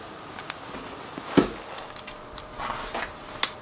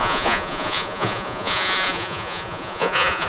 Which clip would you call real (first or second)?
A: first